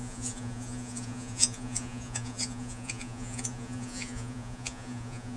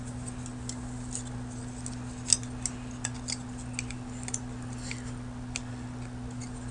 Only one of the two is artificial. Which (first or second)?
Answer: first